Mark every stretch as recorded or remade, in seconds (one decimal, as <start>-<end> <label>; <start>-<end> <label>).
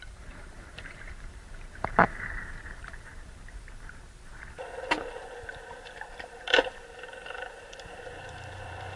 0.0-9.0 remade